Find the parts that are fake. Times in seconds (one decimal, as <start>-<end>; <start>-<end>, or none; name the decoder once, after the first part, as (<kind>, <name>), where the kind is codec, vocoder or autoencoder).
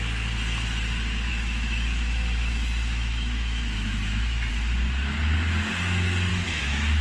1.3-4.5 (autoencoder, DAC-VAE); 6.3-7.0